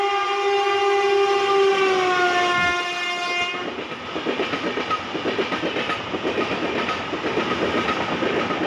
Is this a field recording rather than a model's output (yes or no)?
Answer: yes